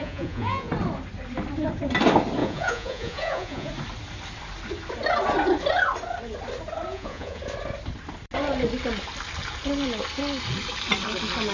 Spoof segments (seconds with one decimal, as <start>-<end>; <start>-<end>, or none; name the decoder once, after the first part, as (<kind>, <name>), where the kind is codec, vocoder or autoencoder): 0.0-0.7 (vocoder, Vocos); 2.4-3.7; 6.9-7.4